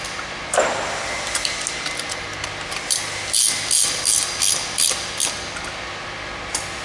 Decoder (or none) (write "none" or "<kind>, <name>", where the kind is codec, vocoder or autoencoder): none